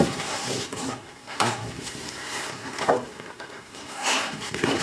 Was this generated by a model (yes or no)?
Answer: yes